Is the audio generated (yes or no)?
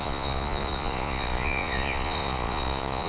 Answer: yes